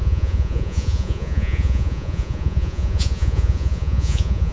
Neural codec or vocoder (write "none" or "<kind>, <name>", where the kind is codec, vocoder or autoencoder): vocoder, Vocos